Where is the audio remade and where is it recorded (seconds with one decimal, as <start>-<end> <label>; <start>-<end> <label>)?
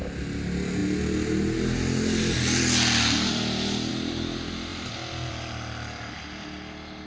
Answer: 0.0-7.1 recorded